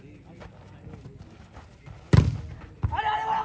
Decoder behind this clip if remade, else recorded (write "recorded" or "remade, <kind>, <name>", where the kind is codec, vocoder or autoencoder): recorded